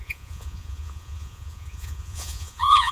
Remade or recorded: remade